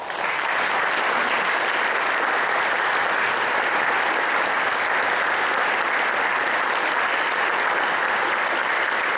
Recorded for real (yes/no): yes